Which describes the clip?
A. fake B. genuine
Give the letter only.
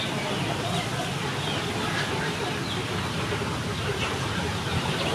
B